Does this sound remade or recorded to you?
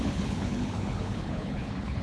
remade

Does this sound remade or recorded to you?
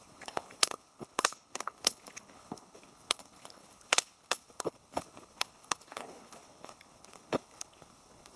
remade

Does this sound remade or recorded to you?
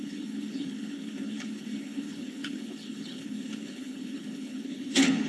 remade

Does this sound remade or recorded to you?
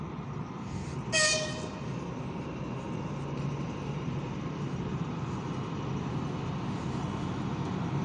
recorded